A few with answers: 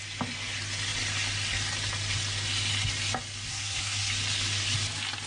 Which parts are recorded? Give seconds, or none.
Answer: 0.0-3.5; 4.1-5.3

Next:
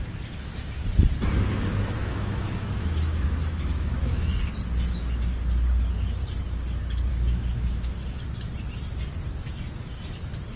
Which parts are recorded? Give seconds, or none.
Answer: 0.0-2.0; 4.3-7.1; 8.2-10.6

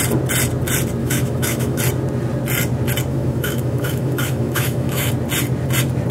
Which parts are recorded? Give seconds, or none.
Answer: 0.0-1.0; 1.8-3.1; 5.1-6.1

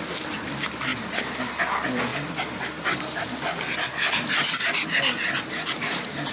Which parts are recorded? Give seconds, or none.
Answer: 0.0-6.3